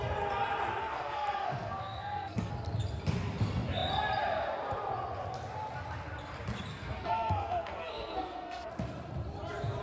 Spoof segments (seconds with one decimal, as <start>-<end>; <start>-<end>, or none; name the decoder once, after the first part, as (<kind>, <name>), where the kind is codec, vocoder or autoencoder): 0.8-2.5 (codec, SNAC); 6.7-8.7